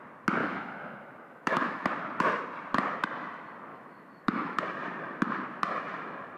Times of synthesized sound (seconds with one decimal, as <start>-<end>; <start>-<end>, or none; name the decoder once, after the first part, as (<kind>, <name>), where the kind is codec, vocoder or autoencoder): 0.4-1.9 (autoencoder, DAC-VAE); 3.7-4.6